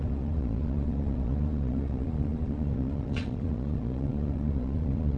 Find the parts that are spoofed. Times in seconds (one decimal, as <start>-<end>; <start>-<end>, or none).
0.0-5.2